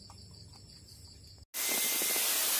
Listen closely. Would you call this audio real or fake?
real